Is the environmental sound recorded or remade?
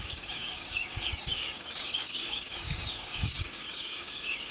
remade